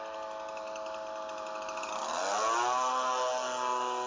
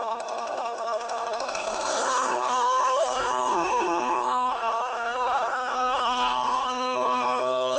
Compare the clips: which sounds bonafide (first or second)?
first